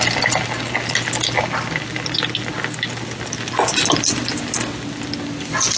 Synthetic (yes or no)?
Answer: no